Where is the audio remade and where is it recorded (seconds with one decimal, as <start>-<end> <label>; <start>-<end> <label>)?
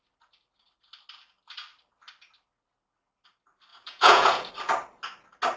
0.0-3.7 recorded; 3.7-4.5 remade; 4.5-5.6 recorded